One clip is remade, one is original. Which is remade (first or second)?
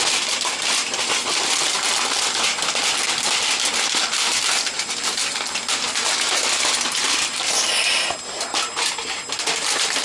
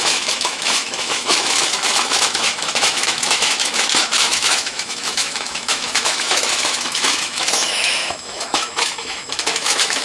second